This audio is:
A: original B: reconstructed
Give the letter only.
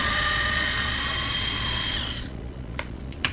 B